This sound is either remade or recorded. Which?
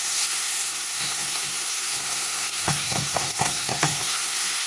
remade